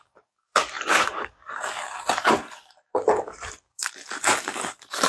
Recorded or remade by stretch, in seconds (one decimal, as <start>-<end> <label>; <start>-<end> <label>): 0.0-5.1 remade